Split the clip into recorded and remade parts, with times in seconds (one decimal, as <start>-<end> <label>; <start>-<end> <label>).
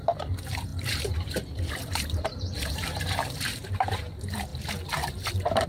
0.0-5.7 remade